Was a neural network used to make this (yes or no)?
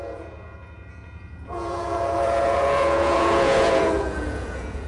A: yes